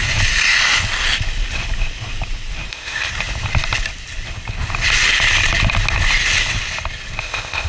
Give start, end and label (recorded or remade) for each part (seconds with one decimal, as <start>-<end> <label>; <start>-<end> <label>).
0.0-2.7 recorded; 2.7-3.1 remade; 3.1-7.2 recorded; 7.2-7.7 remade

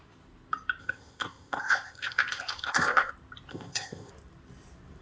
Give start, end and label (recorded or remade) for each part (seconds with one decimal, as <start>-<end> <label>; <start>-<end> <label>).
0.0-0.8 recorded; 0.8-3.1 remade; 3.1-3.5 recorded; 3.5-4.1 remade; 4.1-5.0 recorded

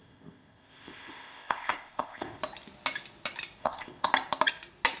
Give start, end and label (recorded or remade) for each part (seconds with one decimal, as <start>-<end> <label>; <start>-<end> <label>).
0.0-2.4 remade; 2.4-3.6 recorded; 3.6-4.1 remade; 4.1-5.0 recorded